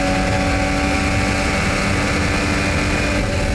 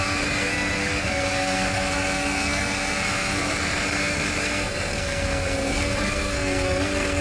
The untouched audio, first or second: first